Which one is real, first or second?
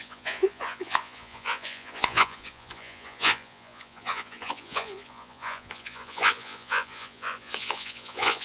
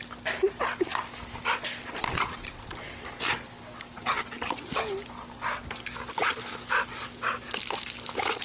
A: second